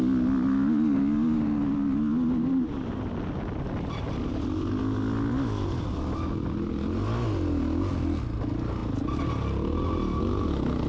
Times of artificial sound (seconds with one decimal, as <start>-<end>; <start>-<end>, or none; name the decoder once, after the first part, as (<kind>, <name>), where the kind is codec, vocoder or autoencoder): none